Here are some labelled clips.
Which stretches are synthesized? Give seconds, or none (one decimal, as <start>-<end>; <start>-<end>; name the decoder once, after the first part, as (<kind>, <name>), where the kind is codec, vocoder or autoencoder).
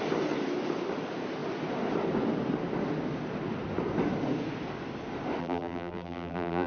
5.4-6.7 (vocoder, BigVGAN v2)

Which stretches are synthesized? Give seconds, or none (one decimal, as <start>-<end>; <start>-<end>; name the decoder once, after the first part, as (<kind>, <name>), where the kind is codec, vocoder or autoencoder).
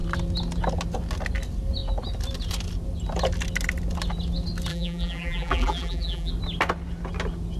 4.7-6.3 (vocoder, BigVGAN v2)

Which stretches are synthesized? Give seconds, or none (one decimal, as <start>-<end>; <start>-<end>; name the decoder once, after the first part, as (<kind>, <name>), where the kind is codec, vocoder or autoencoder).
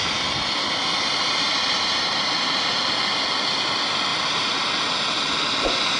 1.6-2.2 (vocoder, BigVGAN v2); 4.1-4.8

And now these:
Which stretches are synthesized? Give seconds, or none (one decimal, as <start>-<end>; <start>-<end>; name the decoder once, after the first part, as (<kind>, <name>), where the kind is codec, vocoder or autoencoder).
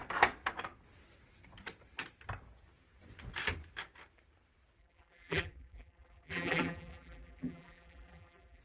4.8-8.6 (vocoder, BigVGAN v2)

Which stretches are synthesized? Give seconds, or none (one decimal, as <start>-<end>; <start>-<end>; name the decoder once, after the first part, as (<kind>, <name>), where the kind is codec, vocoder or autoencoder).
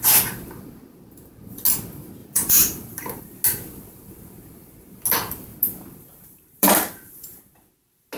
2.2-3.2 (vocoder, BigVGAN v2); 5.5-7.4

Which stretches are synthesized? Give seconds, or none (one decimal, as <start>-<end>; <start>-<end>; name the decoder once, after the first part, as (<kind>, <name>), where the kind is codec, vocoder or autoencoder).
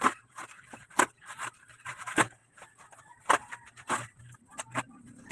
0.0-0.4 (vocoder, BigVGAN v2); 1.2-2.4; 4.2-5.3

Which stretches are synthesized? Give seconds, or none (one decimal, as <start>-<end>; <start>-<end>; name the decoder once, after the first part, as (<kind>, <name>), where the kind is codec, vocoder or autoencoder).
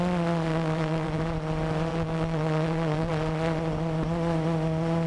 0.5-1.2 (vocoder, BigVGAN v2); 1.9-3.1